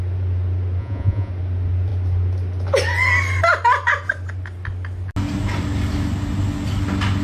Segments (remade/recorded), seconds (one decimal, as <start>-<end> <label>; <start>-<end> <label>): 0.0-0.8 recorded; 0.8-1.3 remade; 1.3-7.2 recorded